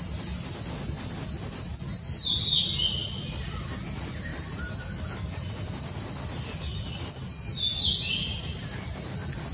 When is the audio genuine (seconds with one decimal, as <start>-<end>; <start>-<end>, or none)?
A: 0.0-3.0; 3.6-9.5